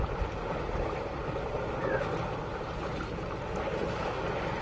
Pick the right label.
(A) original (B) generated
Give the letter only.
A